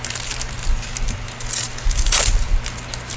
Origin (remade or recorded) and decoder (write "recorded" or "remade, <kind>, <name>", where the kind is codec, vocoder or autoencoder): recorded